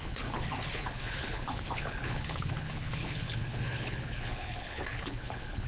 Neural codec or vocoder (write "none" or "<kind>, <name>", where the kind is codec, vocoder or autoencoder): codec, HILCodec